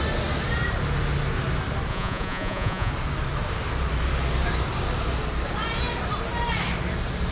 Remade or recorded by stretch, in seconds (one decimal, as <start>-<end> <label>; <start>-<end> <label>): 0.0-1.9 recorded; 1.9-2.9 remade; 2.9-7.3 recorded